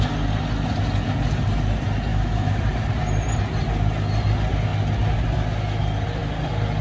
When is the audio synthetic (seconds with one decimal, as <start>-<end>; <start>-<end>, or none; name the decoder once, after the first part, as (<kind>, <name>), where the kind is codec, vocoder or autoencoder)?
2.1-2.6 (autoencoder, DAC-VAE)